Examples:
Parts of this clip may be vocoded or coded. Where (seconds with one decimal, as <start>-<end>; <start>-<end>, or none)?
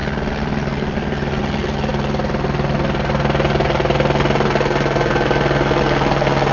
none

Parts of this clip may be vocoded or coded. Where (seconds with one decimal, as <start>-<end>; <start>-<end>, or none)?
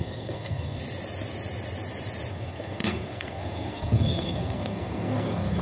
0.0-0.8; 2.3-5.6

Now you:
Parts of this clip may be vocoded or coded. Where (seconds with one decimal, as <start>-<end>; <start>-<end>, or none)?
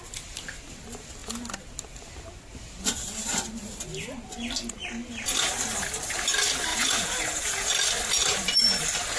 6.7-7.7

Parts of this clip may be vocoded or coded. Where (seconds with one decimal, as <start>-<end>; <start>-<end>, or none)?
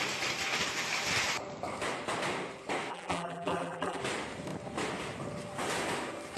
2.9-4.0